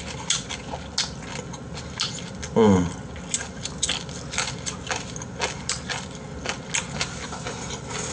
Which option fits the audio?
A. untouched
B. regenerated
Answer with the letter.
A